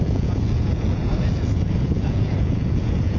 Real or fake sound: fake